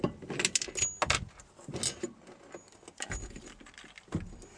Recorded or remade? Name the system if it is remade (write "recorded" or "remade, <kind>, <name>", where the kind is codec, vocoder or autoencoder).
recorded